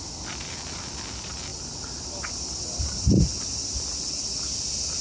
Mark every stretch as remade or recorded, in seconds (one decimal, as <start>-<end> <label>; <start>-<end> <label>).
0.0-5.0 recorded